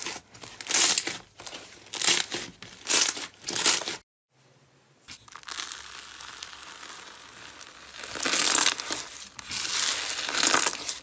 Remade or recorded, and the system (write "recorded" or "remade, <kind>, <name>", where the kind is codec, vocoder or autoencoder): recorded